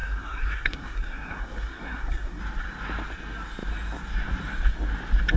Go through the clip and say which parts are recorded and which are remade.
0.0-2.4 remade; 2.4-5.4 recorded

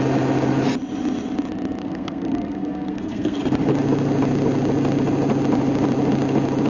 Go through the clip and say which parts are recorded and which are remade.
0.0-1.8 recorded; 1.8-3.4 remade; 3.4-6.7 recorded

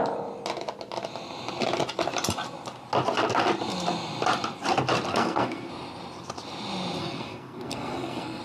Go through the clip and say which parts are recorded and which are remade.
0.0-5.1 recorded; 5.1-5.7 remade; 5.7-7.0 recorded; 7.0-8.4 remade

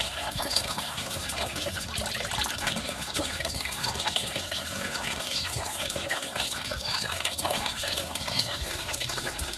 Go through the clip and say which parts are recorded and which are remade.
0.0-1.9 remade; 1.9-2.5 recorded; 2.5-9.6 remade